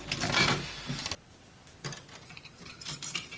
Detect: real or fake real